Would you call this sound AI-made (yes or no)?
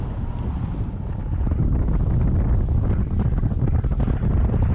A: no